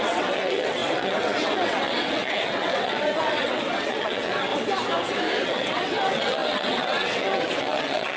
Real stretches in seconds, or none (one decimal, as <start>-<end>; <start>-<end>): 4.5-5.4